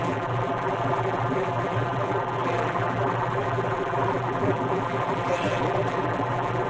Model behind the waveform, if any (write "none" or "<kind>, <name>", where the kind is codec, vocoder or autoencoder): vocoder, BigVGAN v2